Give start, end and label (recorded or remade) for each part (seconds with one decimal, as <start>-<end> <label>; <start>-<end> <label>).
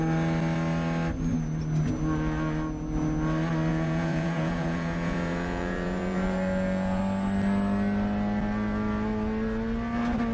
0.0-3.7 recorded; 3.7-7.0 remade; 7.0-10.3 recorded